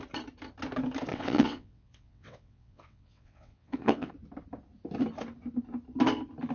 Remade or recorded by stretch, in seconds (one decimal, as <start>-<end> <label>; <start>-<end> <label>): 0.0-1.1 recorded; 1.1-4.1 remade; 4.1-6.5 recorded